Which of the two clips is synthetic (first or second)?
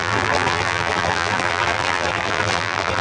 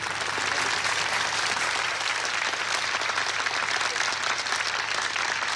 first